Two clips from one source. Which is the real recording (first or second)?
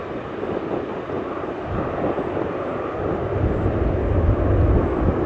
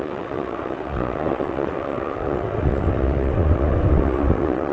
first